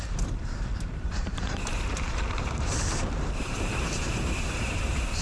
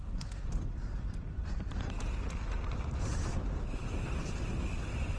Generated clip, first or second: first